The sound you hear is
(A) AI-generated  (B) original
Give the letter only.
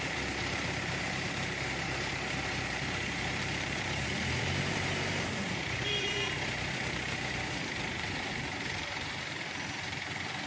A